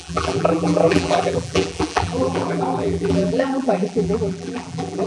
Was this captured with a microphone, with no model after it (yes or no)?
no